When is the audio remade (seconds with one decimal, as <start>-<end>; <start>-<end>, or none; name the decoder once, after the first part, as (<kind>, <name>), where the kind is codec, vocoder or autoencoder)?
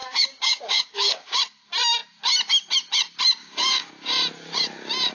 0.0-1.4 (codec, DAC); 3.4-3.9